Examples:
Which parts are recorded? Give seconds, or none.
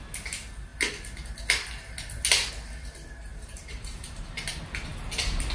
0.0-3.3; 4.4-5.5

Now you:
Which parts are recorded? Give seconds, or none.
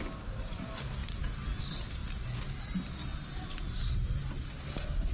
0.0-5.1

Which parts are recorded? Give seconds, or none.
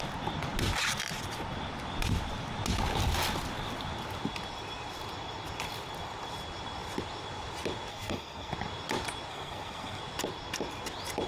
0.0-7.9; 8.5-9.3; 10.0-11.3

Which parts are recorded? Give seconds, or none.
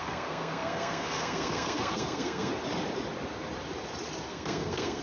2.5-4.3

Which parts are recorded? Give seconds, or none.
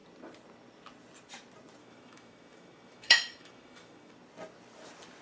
0.0-1.8; 4.1-5.2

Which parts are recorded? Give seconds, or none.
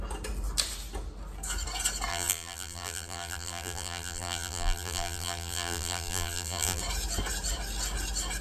0.0-2.1; 6.8-8.4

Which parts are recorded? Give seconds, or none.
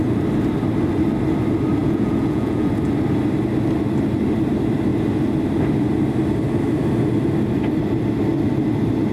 0.0-1.8; 2.7-9.1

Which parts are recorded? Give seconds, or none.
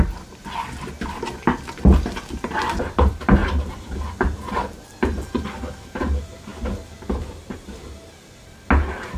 0.0-3.4; 4.9-9.2